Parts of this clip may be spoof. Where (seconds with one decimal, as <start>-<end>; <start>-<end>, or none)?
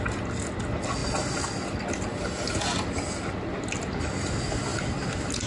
none